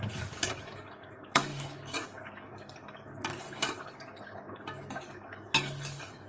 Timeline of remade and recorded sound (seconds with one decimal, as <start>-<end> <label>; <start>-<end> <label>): 0.0-6.3 remade